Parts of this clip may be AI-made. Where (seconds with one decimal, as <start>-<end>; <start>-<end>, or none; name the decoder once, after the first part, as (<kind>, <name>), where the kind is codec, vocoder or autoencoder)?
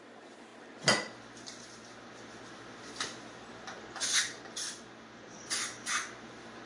none